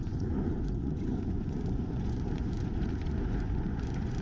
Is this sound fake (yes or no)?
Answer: yes